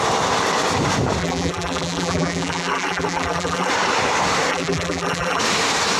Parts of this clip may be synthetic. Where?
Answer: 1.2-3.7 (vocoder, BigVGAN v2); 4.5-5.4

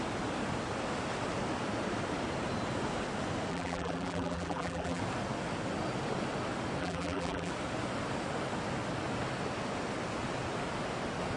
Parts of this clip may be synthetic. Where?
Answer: 3.5-5.0 (vocoder, BigVGAN v2); 6.8-7.5

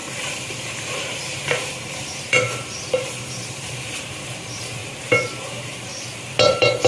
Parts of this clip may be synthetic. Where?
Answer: 0.0-4.8 (vocoder, BigVGAN v2); 5.3-5.9; 6.5-6.9

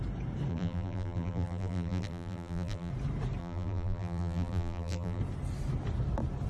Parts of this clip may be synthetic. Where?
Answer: 0.5-2.9 (vocoder, BigVGAN v2); 3.4-5.2